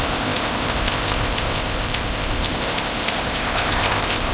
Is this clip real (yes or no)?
no